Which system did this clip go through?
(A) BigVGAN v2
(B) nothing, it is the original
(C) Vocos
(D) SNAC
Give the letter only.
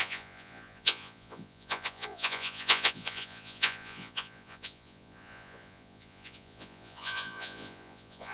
C